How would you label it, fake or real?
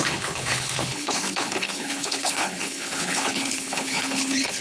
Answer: fake